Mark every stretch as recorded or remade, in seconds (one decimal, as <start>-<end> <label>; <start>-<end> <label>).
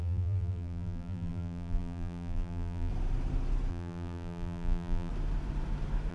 0.0-2.9 remade; 2.9-3.7 recorded; 3.7-5.1 remade; 5.1-6.1 recorded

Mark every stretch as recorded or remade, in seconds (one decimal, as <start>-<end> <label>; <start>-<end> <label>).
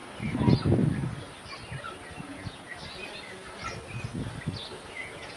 0.0-2.2 recorded; 2.2-2.7 remade; 2.7-4.9 recorded; 4.9-5.4 remade